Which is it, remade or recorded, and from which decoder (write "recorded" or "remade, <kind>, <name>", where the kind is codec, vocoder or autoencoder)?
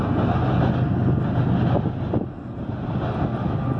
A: recorded